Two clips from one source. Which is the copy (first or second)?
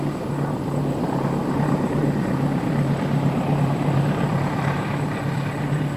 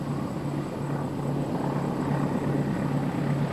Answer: first